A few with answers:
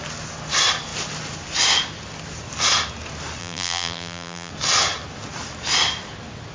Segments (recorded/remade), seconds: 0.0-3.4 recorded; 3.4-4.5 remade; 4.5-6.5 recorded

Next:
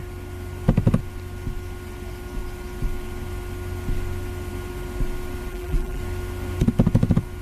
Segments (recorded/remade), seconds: 0.0-5.5 recorded; 5.5-6.0 remade; 6.0-7.4 recorded

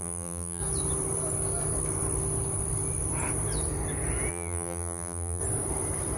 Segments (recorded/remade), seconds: 0.0-0.6 remade; 0.6-4.3 recorded; 4.3-5.4 remade; 5.4-6.2 recorded

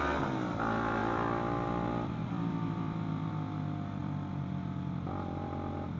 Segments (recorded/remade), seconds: 0.0-1.0 recorded; 1.0-3.3 remade; 3.3-4.0 recorded; 4.0-6.0 remade

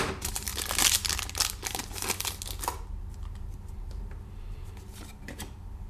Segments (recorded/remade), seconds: 0.0-0.5 remade; 0.5-3.0 recorded; 3.0-5.9 remade

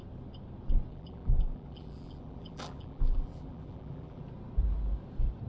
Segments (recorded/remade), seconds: 0.0-0.9 recorded; 0.9-4.2 remade; 4.2-5.5 recorded